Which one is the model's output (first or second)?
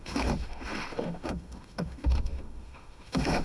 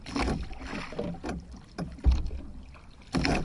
first